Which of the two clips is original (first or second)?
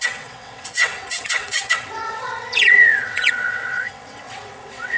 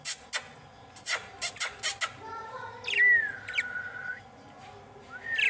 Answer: second